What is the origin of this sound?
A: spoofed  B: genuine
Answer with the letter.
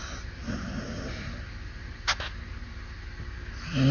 B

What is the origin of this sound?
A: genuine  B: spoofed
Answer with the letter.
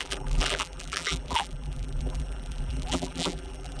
B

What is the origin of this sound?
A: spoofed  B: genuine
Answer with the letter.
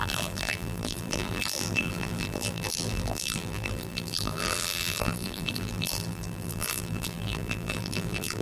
A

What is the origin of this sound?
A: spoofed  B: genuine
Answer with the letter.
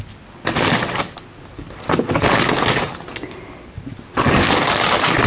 B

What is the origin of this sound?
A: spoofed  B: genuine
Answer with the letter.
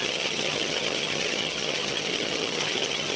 A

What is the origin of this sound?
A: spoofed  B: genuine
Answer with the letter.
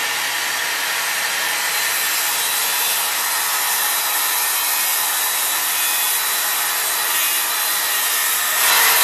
B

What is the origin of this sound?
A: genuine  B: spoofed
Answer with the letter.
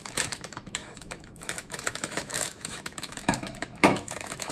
B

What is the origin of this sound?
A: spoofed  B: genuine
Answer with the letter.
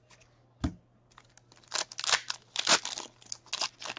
B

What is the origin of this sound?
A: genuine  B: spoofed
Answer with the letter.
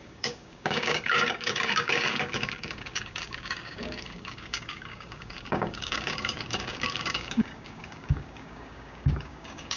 B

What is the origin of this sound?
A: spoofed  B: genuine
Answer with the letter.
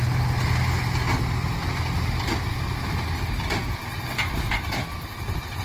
B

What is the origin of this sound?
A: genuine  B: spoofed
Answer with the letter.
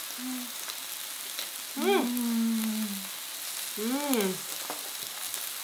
A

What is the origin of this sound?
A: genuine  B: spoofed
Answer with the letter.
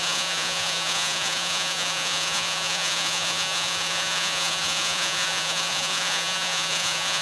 B